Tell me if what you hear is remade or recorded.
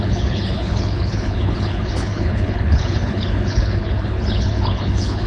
remade